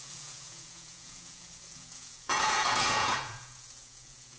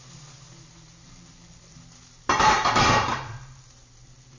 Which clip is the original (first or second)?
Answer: second